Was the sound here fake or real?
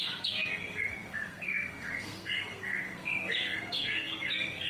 fake